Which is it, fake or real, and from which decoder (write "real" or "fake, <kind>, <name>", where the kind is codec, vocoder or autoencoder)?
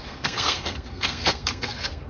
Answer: fake, codec, SNAC